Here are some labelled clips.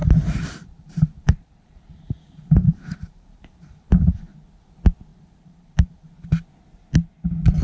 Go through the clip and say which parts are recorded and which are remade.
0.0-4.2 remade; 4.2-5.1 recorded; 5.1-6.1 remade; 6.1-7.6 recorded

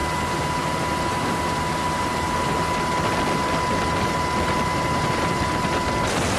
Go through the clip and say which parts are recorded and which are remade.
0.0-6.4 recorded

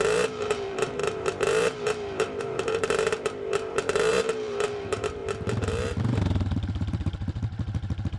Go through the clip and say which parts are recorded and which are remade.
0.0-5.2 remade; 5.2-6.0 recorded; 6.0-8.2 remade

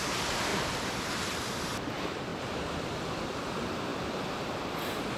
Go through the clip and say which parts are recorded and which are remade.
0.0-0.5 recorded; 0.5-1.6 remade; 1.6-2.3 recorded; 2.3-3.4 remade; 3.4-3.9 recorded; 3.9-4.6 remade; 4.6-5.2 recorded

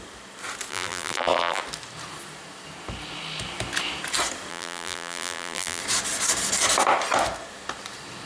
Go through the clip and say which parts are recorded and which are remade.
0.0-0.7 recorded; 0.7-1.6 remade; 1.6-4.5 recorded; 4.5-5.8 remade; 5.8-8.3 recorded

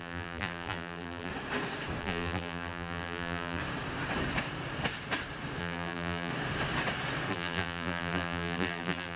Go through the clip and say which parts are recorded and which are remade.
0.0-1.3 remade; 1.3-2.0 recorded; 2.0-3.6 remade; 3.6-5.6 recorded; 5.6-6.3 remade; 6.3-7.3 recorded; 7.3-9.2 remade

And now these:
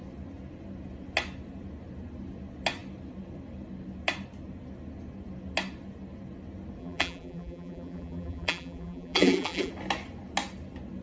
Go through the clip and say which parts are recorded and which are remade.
0.0-6.8 recorded; 6.8-9.7 remade; 9.7-11.0 recorded

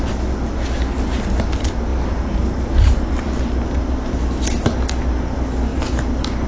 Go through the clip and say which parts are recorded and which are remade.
0.0-6.5 recorded